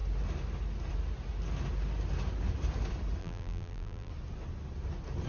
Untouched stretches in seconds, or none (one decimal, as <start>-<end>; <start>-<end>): 0.0-3.2; 4.1-5.3

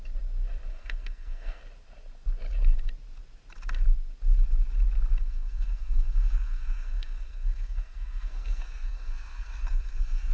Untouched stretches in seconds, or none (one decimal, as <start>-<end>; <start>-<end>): 0.0-0.7; 1.6-5.2

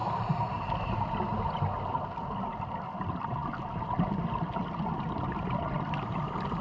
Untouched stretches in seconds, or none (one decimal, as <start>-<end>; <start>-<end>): 0.0-6.6

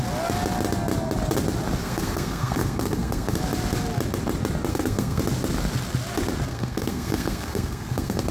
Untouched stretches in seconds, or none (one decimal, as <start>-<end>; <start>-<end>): 0.0-1.8; 3.4-4.7; 5.2-6.5

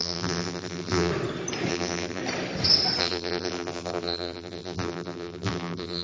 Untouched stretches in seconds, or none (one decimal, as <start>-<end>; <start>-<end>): 1.1-1.7; 2.2-3.0